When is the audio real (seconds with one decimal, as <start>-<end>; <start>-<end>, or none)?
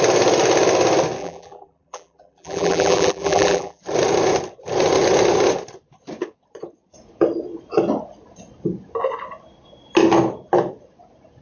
0.0-1.2; 3.8-11.4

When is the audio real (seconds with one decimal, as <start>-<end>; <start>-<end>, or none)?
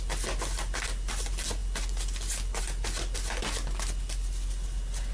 0.0-5.1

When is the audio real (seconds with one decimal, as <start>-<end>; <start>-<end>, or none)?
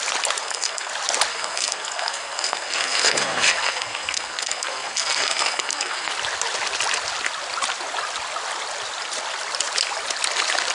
0.0-0.4; 0.9-1.3; 6.1-10.7